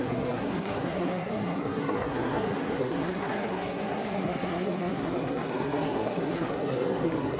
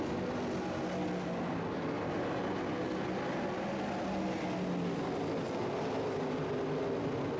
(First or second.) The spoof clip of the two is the first